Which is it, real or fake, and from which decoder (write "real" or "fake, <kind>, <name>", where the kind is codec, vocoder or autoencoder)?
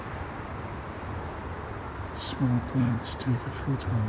fake, vocoder, BigVGAN v2